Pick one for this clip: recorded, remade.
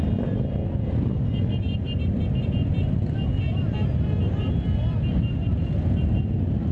recorded